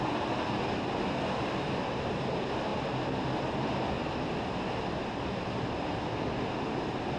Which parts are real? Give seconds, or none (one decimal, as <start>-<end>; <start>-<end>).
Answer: 0.0-7.2